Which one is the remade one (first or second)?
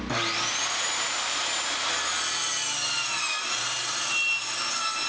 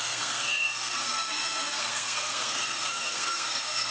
second